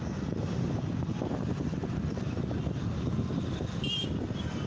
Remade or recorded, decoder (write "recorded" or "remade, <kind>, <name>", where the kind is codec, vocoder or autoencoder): recorded